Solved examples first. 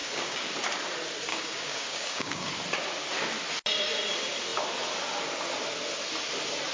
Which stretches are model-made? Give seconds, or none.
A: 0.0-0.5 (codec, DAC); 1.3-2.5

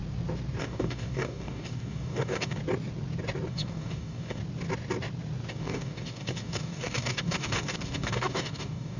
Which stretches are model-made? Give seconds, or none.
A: 0.6-2.6 (codec, DAC); 3.5-4.4; 5.5-9.0

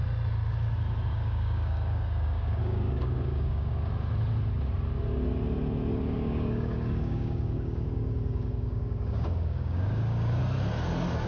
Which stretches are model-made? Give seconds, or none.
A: 1.1-3.9 (codec, DAC); 5.9-10.4

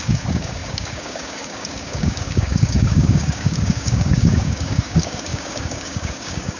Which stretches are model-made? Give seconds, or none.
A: 0.0-6.6 (codec, DAC)

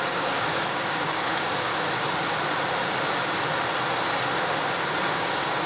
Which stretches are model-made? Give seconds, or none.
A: 0.0-1.7 (codec, DAC); 5.1-5.7

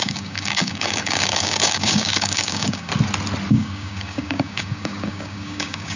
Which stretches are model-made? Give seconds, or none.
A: 0.0-2.9 (codec, DAC); 3.5-6.0